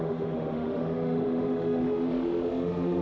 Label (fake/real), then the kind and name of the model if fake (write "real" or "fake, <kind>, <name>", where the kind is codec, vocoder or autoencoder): fake, autoencoder, DAC-VAE